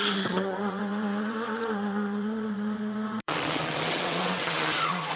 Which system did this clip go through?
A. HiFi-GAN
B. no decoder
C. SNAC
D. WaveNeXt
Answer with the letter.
D